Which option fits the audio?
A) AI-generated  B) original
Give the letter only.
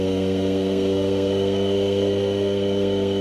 A